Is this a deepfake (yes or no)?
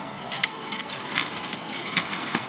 yes